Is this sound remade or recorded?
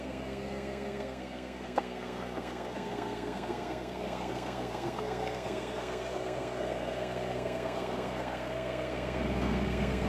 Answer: remade